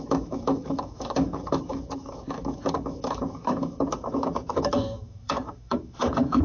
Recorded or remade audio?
remade